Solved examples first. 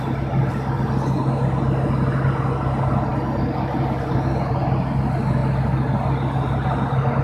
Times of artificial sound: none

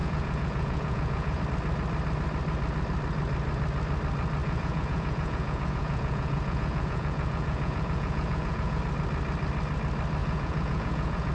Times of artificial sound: 0.0-1.4 (vocoder, Vocos); 4.4-8.8; 10.2-11.3